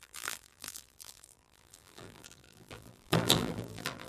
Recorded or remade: remade